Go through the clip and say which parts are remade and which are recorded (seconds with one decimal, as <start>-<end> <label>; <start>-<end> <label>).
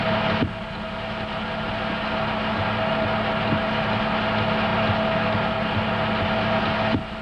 0.0-7.2 recorded